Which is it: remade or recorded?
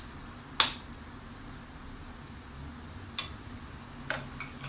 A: recorded